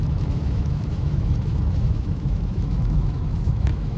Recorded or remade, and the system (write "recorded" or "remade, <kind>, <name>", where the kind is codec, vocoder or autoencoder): remade, autoencoder, DAC-VAE